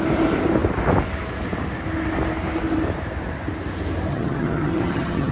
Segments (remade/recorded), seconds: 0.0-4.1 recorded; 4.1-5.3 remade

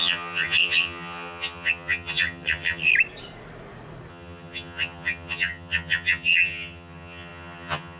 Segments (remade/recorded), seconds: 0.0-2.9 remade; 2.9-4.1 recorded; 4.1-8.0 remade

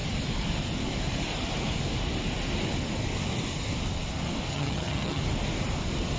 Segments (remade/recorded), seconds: 0.0-4.5 recorded; 4.5-5.2 remade; 5.2-6.2 recorded

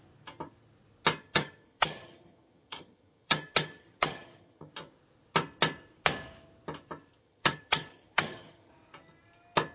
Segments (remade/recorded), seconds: 0.0-1.2 recorded; 1.2-4.7 remade; 4.7-7.2 recorded; 7.2-8.7 remade; 8.7-9.7 recorded

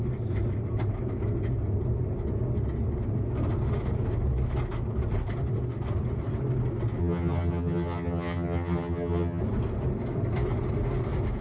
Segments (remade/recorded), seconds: 0.0-7.0 recorded; 7.0-9.4 remade; 9.4-11.4 recorded